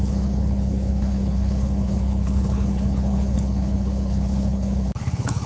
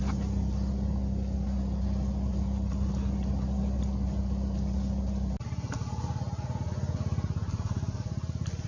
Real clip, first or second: second